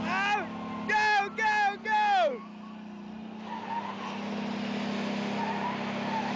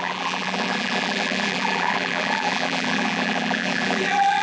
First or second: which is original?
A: first